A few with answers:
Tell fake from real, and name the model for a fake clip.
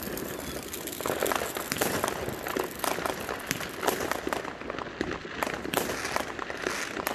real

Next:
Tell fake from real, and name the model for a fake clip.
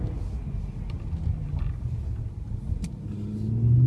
real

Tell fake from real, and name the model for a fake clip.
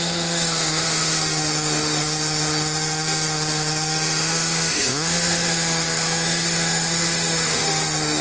fake, autoencoder, DAC-VAE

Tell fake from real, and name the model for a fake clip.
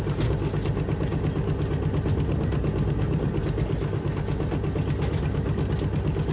real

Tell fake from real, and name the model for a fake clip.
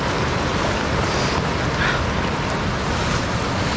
real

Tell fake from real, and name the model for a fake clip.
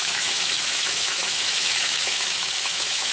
fake, autoencoder, DAC-VAE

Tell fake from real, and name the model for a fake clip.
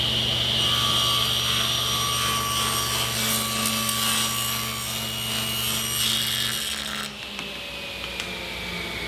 real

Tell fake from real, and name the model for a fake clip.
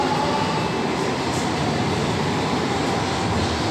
real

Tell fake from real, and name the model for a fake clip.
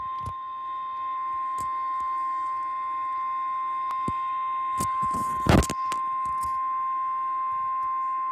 real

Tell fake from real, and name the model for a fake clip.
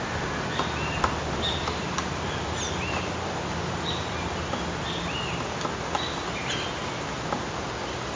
real